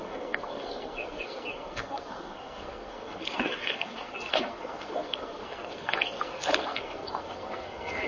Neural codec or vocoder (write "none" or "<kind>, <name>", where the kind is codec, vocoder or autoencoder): codec, SNAC